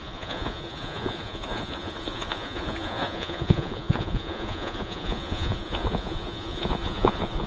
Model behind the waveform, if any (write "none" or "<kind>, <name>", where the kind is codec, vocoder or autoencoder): vocoder, Vocos